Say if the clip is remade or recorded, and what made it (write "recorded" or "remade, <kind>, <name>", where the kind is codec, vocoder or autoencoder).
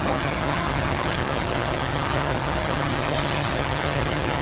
remade, vocoder, HiFi-GAN